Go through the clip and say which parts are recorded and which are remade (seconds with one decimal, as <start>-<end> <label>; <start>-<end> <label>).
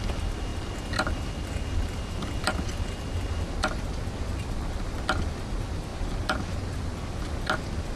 0.0-8.0 recorded